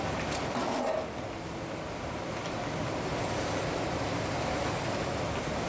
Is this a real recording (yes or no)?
yes